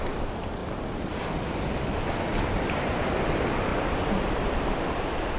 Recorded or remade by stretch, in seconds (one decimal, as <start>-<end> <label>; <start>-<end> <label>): 0.0-0.6 remade; 0.6-3.2 recorded; 3.2-3.7 remade; 3.7-4.3 recorded; 4.3-5.4 remade